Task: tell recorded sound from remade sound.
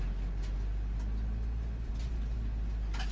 recorded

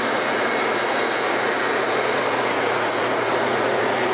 remade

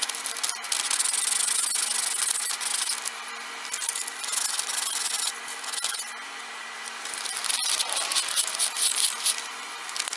recorded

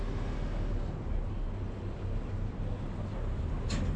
recorded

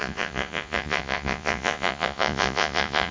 remade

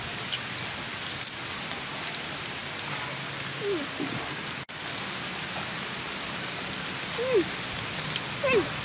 recorded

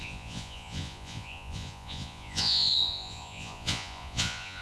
remade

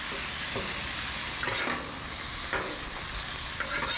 recorded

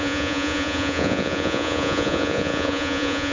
remade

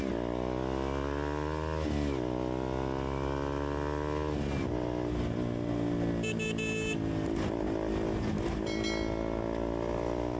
recorded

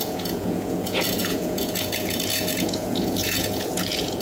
remade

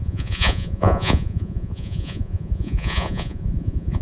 remade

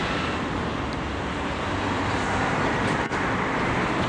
recorded